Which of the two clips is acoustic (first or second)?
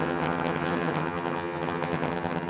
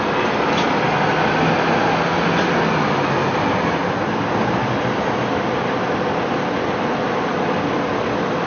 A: second